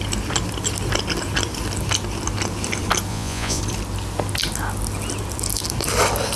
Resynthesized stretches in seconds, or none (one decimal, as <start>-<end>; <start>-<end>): 3.1-3.6